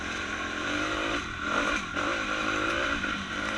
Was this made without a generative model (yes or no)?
no